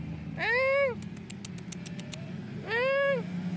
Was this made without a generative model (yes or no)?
yes